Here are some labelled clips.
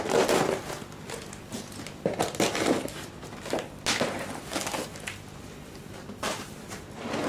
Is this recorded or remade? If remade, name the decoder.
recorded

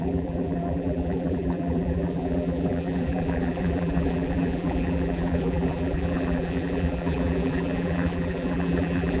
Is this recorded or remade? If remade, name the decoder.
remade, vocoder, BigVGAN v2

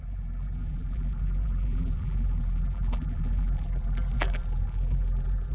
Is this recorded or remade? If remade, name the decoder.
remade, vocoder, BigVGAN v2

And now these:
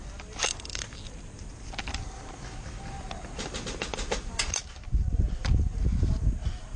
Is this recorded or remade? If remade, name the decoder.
recorded